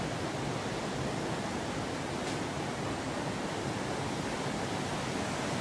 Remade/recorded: recorded